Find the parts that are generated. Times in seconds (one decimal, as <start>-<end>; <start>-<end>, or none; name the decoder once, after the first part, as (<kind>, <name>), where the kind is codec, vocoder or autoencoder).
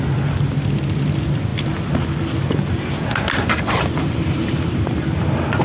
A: none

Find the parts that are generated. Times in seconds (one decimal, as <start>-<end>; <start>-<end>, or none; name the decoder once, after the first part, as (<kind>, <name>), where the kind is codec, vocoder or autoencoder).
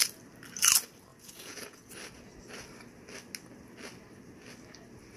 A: 1.1-1.9 (vocoder, Vocos)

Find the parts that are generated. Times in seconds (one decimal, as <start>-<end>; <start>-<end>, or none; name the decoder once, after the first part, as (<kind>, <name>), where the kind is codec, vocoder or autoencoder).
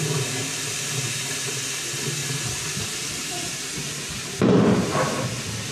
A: 2.2-5.1 (vocoder, BigVGAN v2)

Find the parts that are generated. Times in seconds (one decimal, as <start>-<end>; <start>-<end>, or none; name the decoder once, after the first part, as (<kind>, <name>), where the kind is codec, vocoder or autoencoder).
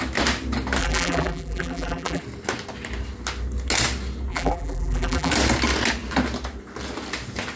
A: 0.8-2.2 (vocoder, BigVGAN v2); 4.3-5.3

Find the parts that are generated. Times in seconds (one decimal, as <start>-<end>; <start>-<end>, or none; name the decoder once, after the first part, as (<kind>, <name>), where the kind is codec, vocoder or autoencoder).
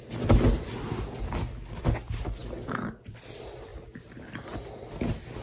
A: 2.4-3.2 (vocoder, BigVGAN v2); 3.7-4.3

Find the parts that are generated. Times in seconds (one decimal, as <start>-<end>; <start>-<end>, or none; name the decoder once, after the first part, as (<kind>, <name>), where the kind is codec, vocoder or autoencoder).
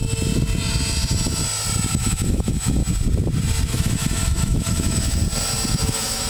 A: 1.9-2.8 (autoencoder, DAC-VAE); 3.7-5.2; 5.7-6.3